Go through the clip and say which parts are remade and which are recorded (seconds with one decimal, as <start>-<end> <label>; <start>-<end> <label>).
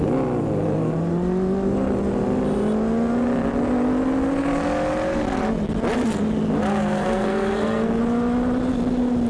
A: 0.0-6.7 recorded; 6.7-8.0 remade; 8.0-9.3 recorded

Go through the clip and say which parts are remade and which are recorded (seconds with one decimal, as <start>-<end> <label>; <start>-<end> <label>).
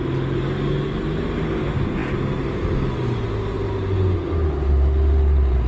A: 0.0-5.7 recorded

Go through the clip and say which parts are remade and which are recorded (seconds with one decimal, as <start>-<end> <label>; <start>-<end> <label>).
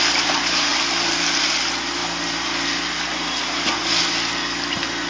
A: 0.0-5.1 recorded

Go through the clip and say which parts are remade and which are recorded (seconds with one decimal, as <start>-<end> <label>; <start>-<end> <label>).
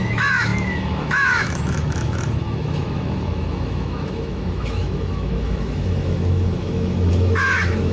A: 0.0-7.9 remade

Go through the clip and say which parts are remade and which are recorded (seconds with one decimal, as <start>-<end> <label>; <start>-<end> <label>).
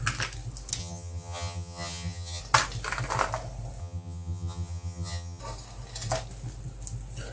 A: 0.0-0.8 recorded; 0.8-2.4 remade; 2.4-3.8 recorded; 3.8-5.4 remade; 5.4-7.3 recorded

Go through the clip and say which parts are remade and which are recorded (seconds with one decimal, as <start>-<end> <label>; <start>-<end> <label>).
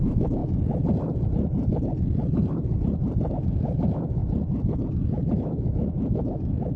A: 0.0-0.4 remade; 0.4-3.3 recorded; 3.3-4.2 remade; 4.2-4.9 recorded; 4.9-6.8 remade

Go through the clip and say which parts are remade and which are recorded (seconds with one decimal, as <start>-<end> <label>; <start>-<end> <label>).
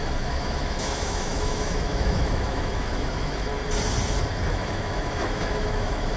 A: 0.0-3.5 remade; 3.5-4.5 recorded; 4.5-6.2 remade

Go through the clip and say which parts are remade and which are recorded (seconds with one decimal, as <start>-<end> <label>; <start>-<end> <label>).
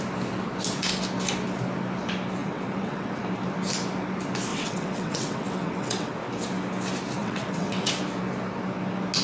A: 0.0-2.4 recorded; 2.4-3.2 remade; 3.2-4.5 recorded; 4.5-6.1 remade; 6.1-7.2 recorded; 7.2-8.0 remade; 8.0-9.2 recorded